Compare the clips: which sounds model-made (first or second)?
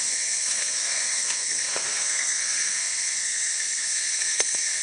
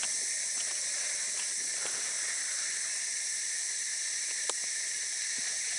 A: first